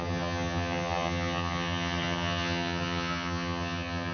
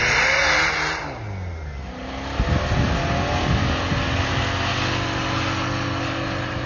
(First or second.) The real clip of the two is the second